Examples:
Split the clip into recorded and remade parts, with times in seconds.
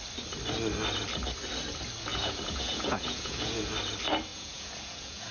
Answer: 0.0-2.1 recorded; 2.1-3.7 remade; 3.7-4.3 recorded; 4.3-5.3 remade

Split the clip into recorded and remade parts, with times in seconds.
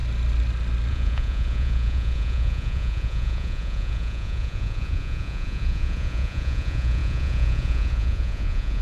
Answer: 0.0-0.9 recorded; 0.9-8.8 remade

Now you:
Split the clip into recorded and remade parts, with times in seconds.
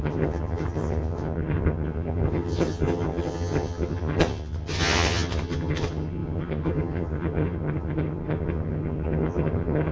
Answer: 0.0-9.9 remade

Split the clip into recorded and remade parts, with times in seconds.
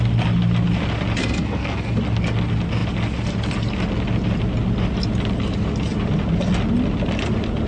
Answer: 0.0-1.2 recorded; 1.2-1.9 remade; 1.9-7.7 recorded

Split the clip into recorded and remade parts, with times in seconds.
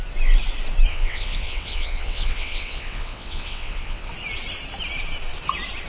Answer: 0.0-0.9 recorded; 0.9-4.1 remade; 4.1-5.9 recorded